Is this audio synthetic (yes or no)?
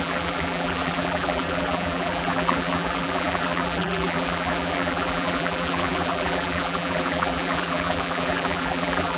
yes